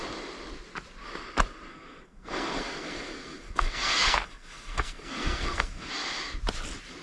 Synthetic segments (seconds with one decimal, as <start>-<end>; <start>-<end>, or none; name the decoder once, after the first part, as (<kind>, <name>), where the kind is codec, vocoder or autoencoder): 1.7-5.9 (codec, SNAC)

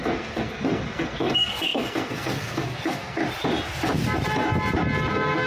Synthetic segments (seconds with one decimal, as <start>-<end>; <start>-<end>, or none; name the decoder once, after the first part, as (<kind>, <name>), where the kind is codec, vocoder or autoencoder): 0.0-3.2 (codec, SNAC); 5.1-5.5

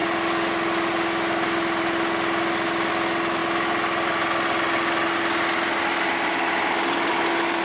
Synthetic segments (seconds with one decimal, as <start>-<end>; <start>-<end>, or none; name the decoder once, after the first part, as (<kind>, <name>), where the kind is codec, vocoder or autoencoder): none

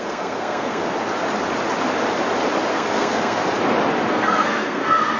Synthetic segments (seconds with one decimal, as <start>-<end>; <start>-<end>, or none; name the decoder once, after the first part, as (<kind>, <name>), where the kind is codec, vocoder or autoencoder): 0.0-0.8 (codec, SNAC); 2.7-3.4; 4.1-5.2

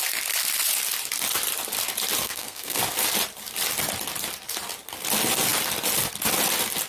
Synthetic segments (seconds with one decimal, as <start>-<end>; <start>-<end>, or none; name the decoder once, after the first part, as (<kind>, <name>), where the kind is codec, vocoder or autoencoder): 2.2-2.8 (codec, SNAC)

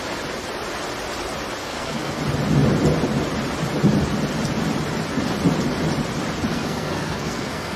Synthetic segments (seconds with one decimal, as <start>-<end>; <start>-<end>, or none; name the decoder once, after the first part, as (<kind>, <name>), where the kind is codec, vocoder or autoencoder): 1.6-2.2 (codec, SNAC); 6.5-7.8

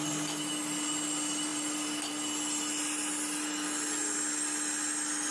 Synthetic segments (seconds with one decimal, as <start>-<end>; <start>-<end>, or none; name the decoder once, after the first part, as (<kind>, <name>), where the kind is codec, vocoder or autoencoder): none